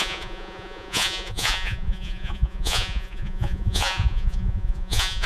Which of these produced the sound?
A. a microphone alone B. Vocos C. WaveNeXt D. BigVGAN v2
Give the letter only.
B